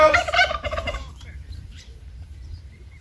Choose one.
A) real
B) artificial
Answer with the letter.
B